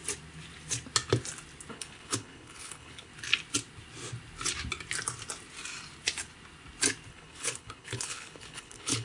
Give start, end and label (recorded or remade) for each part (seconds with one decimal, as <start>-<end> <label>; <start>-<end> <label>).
0.0-1.7 recorded; 1.7-3.1 remade; 3.1-7.1 recorded; 7.1-9.0 remade